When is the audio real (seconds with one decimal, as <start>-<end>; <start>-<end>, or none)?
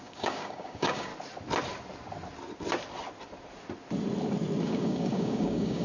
1.1-4.6